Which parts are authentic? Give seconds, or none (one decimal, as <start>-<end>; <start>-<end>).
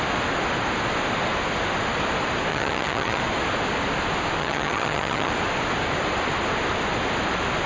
0.0-2.5; 3.2-4.4; 5.3-7.7